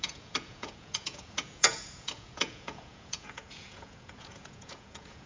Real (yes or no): no